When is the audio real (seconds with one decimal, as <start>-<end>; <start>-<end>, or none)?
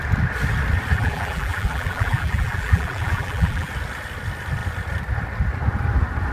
0.0-0.9; 3.7-6.3